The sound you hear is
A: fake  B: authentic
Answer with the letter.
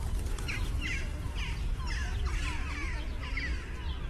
B